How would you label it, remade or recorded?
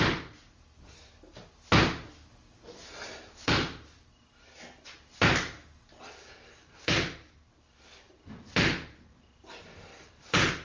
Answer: recorded